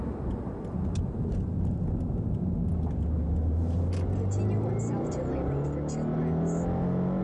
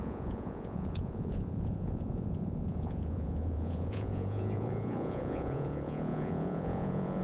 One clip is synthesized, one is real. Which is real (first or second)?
first